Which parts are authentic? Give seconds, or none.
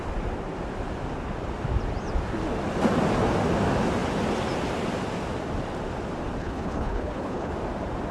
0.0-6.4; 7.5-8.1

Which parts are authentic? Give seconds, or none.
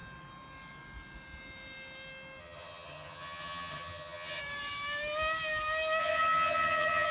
0.0-2.4; 4.4-6.0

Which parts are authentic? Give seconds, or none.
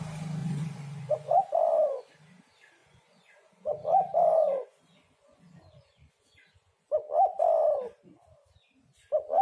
0.0-0.4; 1.4-2.8; 6.9-9.4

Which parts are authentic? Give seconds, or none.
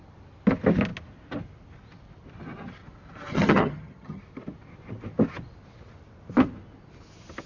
0.0-3.3; 4.2-7.5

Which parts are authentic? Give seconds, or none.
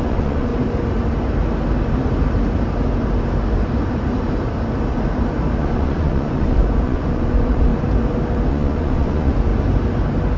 0.5-5.6; 7.7-8.5; 9.5-10.4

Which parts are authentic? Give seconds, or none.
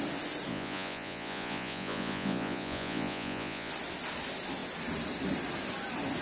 0.0-0.5; 3.7-6.2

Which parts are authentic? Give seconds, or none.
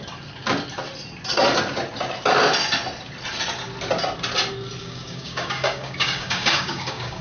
0.0-4.8